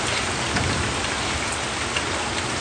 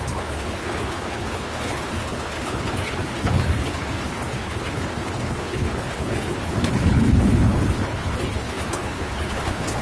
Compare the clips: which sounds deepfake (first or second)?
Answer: second